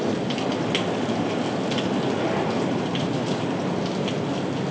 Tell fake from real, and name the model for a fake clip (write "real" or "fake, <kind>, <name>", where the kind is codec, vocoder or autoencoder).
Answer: real